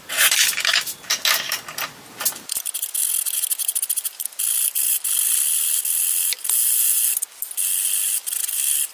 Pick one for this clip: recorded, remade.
recorded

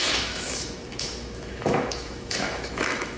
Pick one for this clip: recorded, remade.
remade